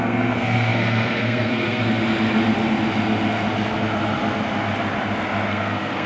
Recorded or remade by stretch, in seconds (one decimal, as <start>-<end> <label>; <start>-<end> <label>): 0.0-1.8 remade; 1.8-5.5 recorded; 5.5-6.1 remade